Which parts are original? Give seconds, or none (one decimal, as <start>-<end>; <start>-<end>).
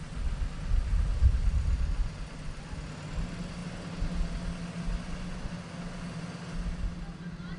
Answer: 0.0-7.6